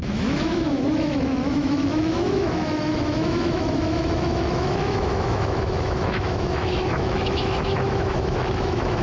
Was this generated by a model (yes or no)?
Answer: yes